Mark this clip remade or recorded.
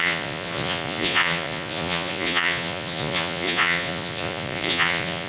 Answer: remade